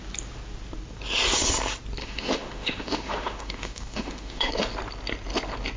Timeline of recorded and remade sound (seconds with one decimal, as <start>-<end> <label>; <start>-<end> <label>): 0.0-2.0 recorded; 2.0-4.5 remade; 4.5-5.8 recorded